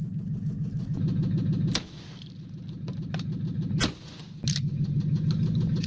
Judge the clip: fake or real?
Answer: real